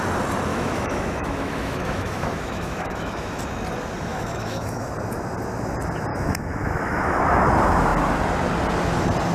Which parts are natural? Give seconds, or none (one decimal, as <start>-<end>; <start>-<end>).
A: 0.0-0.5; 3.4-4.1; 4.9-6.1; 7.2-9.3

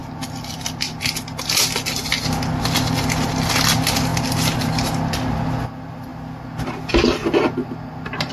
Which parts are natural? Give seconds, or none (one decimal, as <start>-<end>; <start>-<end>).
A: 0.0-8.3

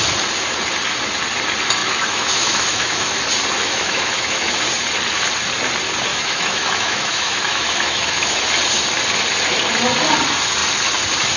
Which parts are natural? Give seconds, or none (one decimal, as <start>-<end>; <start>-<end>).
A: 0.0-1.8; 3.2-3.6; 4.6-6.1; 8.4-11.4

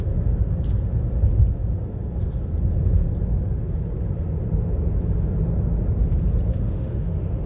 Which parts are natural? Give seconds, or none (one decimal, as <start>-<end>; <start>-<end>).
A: 0.5-6.5

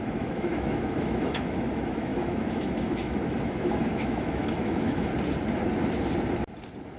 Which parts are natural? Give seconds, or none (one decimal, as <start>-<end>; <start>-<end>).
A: 5.1-7.0

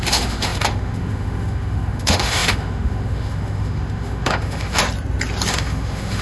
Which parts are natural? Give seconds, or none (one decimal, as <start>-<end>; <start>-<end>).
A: 4.8-5.5

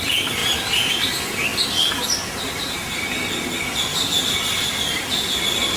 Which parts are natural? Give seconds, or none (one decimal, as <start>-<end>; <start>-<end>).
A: 0.0-5.8